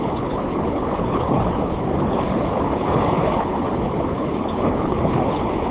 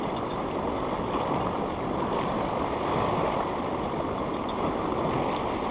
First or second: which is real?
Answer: second